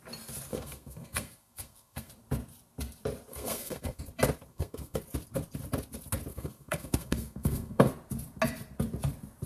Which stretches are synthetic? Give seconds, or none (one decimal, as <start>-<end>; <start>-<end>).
0.5-2.1; 3.3-4.0; 4.5-5.0; 6.3-7.9